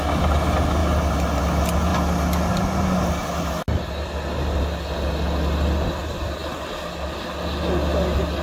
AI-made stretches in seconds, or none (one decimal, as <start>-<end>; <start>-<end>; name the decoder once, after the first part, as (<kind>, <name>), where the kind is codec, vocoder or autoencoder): none